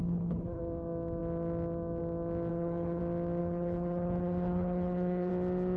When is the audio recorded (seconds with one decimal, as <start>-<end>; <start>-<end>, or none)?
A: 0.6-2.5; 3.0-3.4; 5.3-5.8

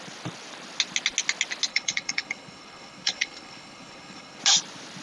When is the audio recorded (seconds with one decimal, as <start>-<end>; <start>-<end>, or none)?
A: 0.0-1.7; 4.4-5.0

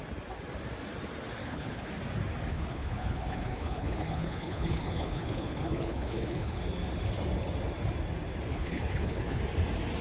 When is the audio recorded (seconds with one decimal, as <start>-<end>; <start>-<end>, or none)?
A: 0.0-1.4; 1.9-2.5; 6.6-8.5; 9.4-10.0